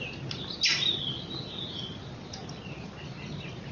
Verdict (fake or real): real